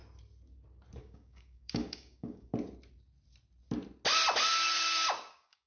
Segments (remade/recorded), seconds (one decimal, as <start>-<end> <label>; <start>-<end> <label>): 0.0-1.0 recorded; 1.0-2.5 remade; 2.5-5.3 recorded; 5.3-5.7 remade